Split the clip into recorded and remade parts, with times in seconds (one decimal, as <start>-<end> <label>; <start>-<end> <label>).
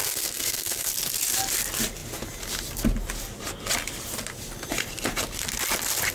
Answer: 0.0-0.9 remade; 0.9-6.1 recorded